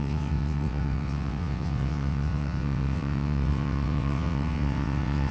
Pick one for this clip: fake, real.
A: fake